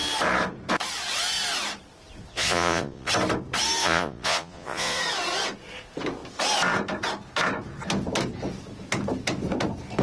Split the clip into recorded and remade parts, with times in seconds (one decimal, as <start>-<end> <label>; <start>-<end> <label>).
0.0-2.3 recorded; 2.3-3.1 remade; 3.1-3.8 recorded; 3.8-5.0 remade; 5.0-10.0 recorded